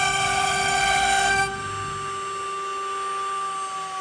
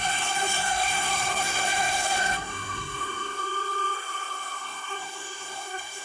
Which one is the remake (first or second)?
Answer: second